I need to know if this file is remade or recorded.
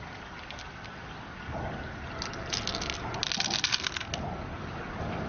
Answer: recorded